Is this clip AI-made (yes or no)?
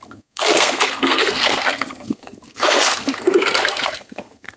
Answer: yes